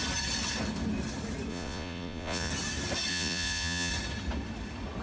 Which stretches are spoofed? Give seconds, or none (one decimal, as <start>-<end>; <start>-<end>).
1.5-2.5; 3.1-3.9